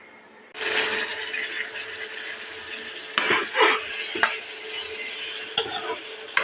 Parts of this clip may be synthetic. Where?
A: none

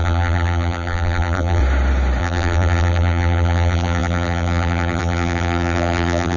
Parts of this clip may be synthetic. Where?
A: 0.0-1.6 (vocoder, BigVGAN v2); 2.2-6.4

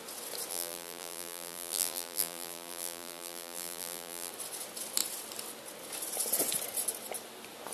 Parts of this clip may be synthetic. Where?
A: 0.5-4.3 (vocoder, BigVGAN v2)

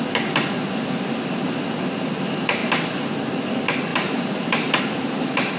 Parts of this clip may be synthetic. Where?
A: 3.9-5.6 (vocoder, BigVGAN v2)

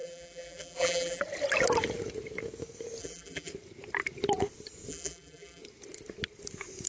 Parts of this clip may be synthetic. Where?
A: 0.0-1.2 (vocoder, BigVGAN v2); 3.0-3.5; 4.9-5.6